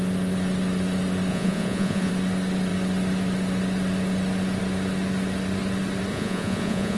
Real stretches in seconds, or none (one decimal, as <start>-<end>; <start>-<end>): 0.0-1.3; 2.1-6.1